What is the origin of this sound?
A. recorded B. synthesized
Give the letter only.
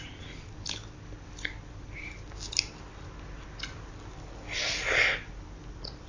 A